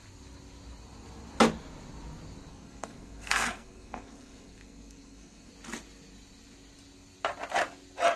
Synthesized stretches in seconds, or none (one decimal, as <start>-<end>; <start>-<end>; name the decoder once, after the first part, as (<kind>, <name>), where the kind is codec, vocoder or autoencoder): 2.5-5.5 (codec, SNAC)